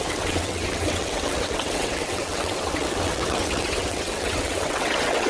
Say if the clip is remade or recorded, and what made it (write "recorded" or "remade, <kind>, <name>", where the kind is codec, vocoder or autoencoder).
remade, vocoder, WaveNeXt